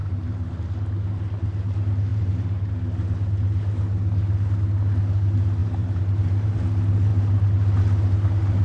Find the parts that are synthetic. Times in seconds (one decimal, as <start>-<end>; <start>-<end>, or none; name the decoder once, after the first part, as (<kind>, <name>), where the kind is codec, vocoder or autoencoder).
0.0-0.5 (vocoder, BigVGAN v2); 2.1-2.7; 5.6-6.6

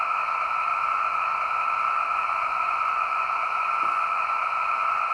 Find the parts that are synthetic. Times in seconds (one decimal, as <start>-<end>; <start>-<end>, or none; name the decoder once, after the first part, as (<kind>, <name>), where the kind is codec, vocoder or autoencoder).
0.7-1.3 (vocoder, Vocos); 2.2-5.1

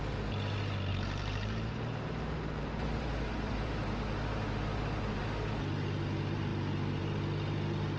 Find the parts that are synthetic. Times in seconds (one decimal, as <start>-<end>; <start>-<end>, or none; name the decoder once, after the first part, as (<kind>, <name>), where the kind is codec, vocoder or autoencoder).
0.9-5.2 (vocoder, BigVGAN v2)